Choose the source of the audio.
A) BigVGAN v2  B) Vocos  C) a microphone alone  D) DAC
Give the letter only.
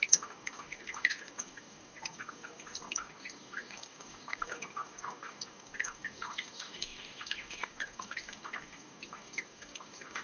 D